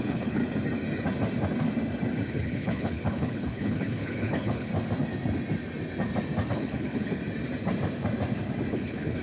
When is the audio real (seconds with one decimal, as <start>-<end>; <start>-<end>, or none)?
0.4-2.3; 4.7-6.5; 7.2-8.7